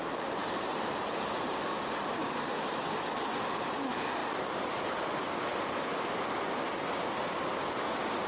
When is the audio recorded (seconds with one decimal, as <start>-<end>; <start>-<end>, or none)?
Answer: 0.0-0.4; 1.2-4.2; 5.9-8.3